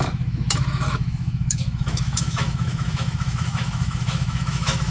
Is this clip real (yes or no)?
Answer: no